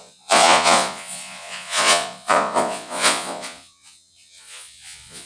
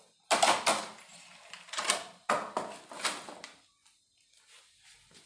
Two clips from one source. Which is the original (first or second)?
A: second